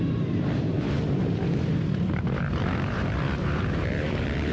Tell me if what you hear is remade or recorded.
remade